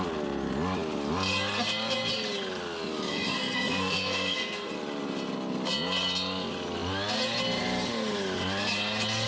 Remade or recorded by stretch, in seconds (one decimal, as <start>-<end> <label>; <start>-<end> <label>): 0.0-3.1 recorded; 3.1-4.7 remade; 4.7-9.3 recorded